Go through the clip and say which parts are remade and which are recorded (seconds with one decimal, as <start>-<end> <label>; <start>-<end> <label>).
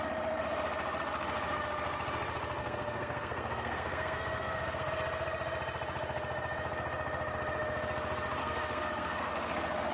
0.0-2.6 recorded; 2.6-4.9 remade; 4.9-8.4 recorded; 8.4-9.3 remade; 9.3-9.9 recorded